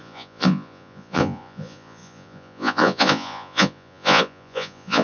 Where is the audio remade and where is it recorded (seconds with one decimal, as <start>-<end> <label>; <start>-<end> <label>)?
0.0-5.0 remade